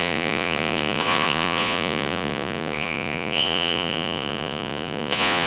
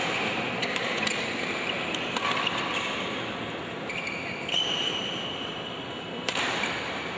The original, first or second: second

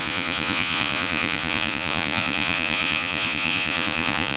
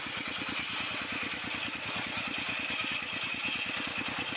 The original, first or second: second